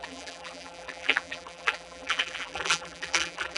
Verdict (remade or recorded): remade